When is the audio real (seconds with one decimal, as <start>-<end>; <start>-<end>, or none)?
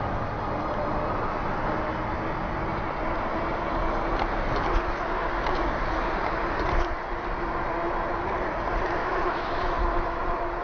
0.0-9.0; 10.2-10.6